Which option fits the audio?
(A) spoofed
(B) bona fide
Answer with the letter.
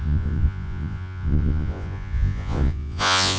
A